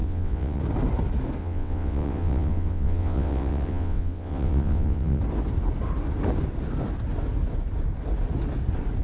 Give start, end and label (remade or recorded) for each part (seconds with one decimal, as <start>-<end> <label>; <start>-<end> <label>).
0.0-0.6 remade; 0.6-1.4 recorded; 1.4-5.2 remade; 5.2-9.0 recorded